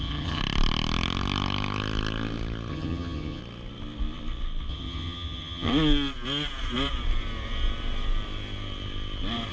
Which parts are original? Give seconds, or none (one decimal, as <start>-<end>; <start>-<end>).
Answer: 0.4-2.7; 3.4-4.7; 5.7-9.5